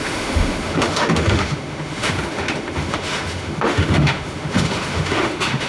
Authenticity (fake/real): fake